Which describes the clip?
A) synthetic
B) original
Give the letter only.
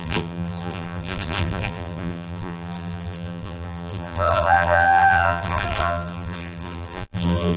A